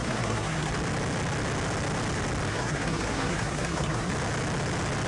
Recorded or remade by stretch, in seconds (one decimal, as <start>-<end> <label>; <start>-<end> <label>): 0.0-0.7 remade; 0.7-2.5 recorded; 2.5-4.1 remade; 4.1-5.1 recorded